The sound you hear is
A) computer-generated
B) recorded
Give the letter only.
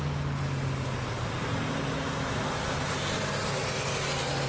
B